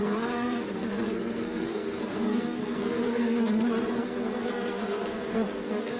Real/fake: fake